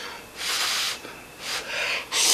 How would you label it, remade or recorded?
recorded